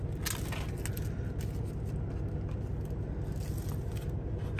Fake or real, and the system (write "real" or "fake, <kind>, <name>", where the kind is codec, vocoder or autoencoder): real